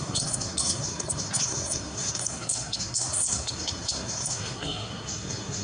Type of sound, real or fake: fake